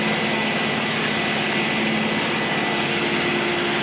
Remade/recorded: recorded